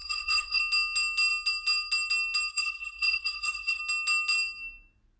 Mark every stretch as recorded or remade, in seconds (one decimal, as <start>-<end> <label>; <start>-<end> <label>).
0.0-0.6 remade; 0.6-2.5 recorded; 2.5-3.8 remade; 3.8-5.2 recorded